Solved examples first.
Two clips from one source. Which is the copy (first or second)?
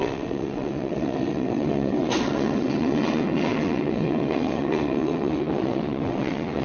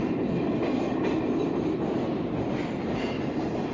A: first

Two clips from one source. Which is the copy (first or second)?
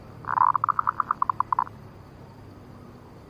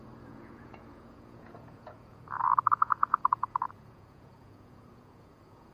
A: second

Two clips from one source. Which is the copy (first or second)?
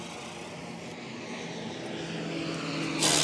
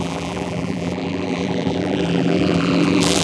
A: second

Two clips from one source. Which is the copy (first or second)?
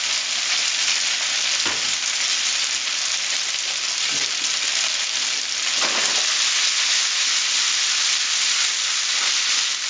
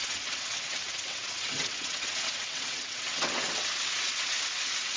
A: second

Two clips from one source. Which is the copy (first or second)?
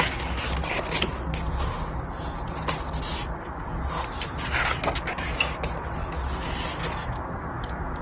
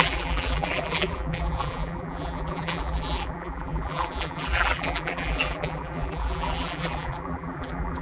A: second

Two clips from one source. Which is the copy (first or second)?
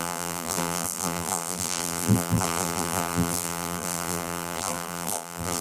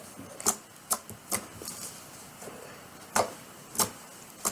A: first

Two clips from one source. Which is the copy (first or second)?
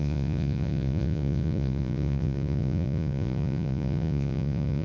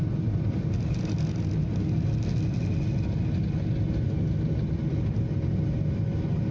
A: first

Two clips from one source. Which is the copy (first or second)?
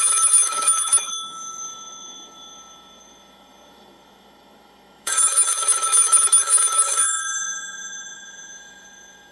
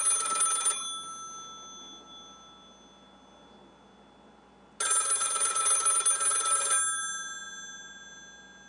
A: first